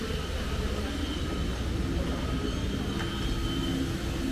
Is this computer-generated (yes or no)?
no